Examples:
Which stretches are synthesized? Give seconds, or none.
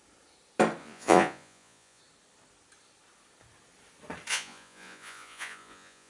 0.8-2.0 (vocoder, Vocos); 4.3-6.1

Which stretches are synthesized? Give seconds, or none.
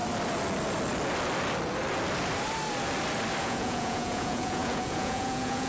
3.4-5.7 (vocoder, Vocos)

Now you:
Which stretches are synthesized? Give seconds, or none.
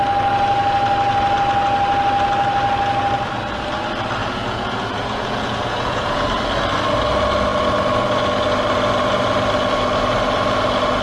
4.2-6.3 (vocoder, Vocos)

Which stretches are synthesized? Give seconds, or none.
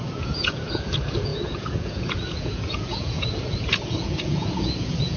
0.0-5.2 (vocoder, Vocos)